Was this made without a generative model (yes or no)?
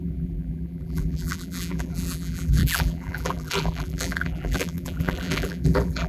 no